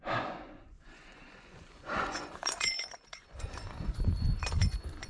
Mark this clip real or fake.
fake